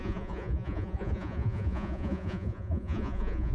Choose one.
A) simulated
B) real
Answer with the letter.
A